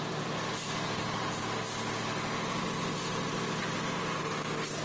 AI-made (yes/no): no